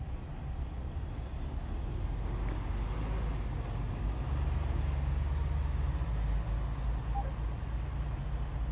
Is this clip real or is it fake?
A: real